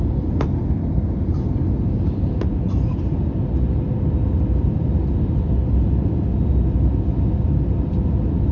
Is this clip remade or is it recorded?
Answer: recorded